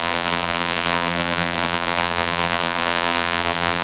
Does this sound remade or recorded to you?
remade